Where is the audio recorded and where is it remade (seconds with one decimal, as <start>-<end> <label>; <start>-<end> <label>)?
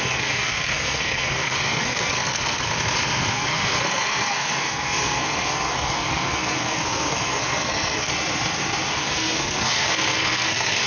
0.0-2.7 remade; 2.7-3.3 recorded; 3.3-8.1 remade; 8.1-9.0 recorded; 9.0-10.9 remade